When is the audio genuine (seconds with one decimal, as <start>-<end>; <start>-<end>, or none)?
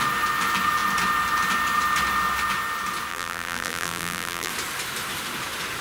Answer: 0.0-3.1; 4.5-5.8